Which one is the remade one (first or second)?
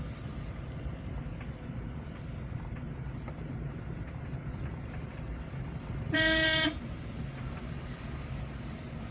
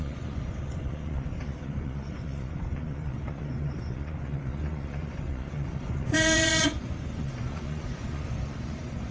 second